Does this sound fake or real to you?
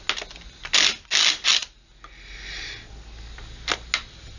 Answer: real